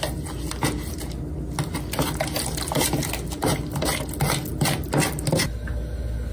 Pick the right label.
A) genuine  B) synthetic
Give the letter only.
A